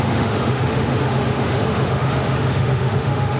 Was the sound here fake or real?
fake